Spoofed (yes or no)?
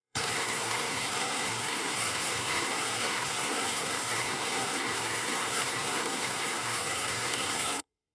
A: yes